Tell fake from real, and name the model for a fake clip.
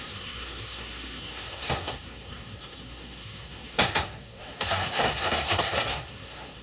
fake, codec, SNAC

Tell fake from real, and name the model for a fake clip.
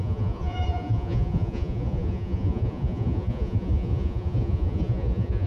fake, vocoder, Vocos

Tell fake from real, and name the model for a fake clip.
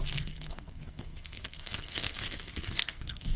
fake, codec, SNAC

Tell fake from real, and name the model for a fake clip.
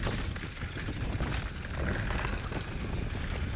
real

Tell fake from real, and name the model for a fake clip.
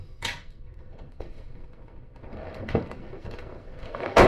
fake, codec, SNAC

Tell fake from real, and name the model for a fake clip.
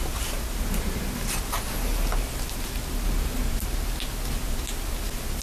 real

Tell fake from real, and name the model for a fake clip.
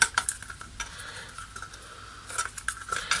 real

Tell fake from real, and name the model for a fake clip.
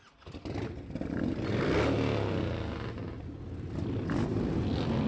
real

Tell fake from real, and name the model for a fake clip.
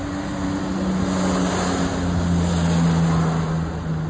real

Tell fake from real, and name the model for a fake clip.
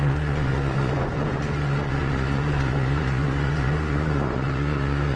fake, vocoder, Vocos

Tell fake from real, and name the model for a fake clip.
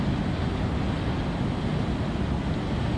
real